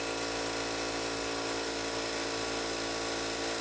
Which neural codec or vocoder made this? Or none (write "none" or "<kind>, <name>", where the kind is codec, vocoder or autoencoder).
none